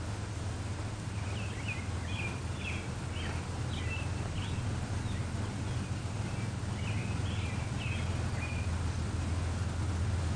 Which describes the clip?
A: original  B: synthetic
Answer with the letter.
A